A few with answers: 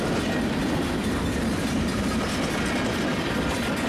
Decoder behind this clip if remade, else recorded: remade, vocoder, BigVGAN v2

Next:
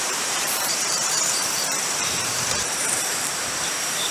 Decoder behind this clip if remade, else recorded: remade, vocoder, BigVGAN v2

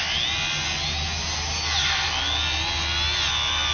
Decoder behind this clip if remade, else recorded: recorded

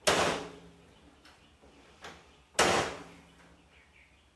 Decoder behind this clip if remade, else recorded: recorded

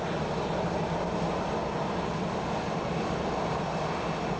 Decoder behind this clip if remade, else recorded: recorded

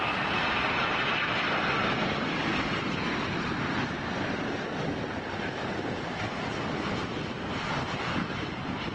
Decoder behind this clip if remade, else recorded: recorded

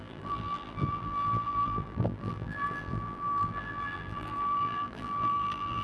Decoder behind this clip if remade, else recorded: remade, vocoder, BigVGAN v2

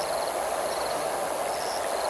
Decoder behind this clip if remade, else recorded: recorded